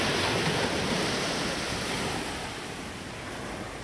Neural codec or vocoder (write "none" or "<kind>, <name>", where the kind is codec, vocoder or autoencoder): none